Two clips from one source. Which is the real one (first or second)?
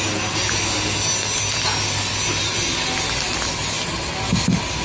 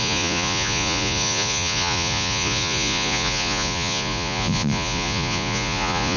first